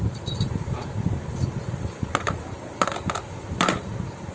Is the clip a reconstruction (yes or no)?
no